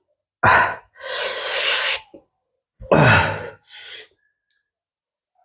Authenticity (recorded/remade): recorded